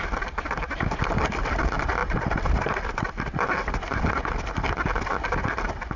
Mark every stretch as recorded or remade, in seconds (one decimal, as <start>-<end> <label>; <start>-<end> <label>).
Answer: 0.0-6.0 recorded